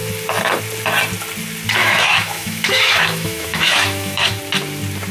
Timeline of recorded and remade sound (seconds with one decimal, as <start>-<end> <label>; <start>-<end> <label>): 0.0-1.8 recorded; 1.8-4.4 remade; 4.4-5.1 recorded